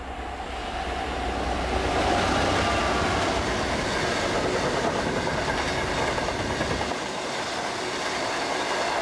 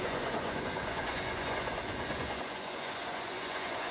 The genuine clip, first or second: first